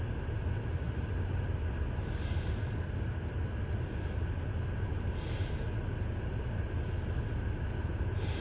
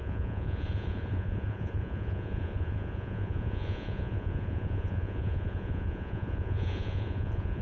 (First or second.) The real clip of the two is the first